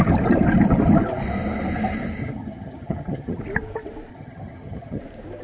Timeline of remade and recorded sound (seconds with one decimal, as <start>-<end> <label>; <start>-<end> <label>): 0.0-2.2 recorded; 2.2-3.4 remade; 3.4-4.1 recorded; 4.1-5.0 remade; 5.0-5.4 recorded

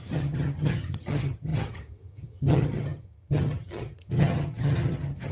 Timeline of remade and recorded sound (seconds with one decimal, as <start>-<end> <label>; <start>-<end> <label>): 0.0-5.3 remade

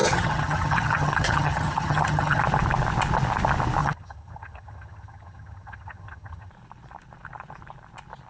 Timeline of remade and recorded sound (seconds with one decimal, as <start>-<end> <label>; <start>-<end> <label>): 0.0-2.4 remade; 2.4-3.8 recorded; 3.8-6.5 remade; 6.5-8.3 recorded

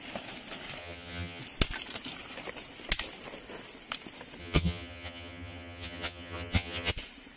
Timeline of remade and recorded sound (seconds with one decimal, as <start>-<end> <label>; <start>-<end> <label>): 0.0-0.8 recorded; 0.8-1.4 remade; 1.4-4.4 recorded; 4.4-6.9 remade; 6.9-7.4 recorded

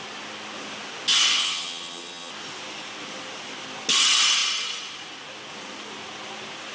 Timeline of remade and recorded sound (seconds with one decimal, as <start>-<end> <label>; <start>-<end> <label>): 0.0-1.4 recorded; 1.4-2.3 remade; 2.3-6.7 recorded

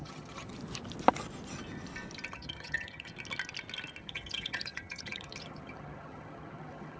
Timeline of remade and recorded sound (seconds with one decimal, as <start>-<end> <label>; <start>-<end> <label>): 0.0-0.5 remade; 0.5-2.3 recorded; 2.3-3.1 remade; 3.1-4.0 recorded; 4.0-7.0 remade

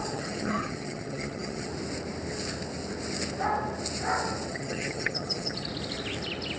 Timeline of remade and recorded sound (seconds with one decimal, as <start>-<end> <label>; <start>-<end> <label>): 0.0-1.7 remade; 1.7-4.5 recorded; 4.5-5.7 remade; 5.7-6.6 recorded

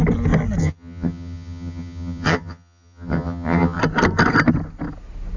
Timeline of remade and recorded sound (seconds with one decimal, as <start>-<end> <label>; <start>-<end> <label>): 0.0-0.6 recorded; 0.6-3.8 remade; 3.8-5.4 recorded